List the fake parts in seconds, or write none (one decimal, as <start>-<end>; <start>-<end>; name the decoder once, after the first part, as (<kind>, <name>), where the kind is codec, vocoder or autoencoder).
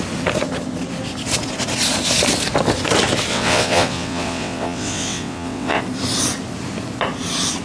3.3-5.8 (vocoder, WaveNeXt)